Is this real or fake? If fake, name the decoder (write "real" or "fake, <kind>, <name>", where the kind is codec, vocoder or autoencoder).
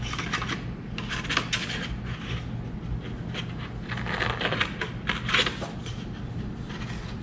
real